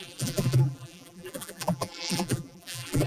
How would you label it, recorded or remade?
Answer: remade